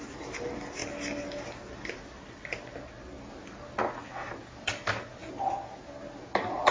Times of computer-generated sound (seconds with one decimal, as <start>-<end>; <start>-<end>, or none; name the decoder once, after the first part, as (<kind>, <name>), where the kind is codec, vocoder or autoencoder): none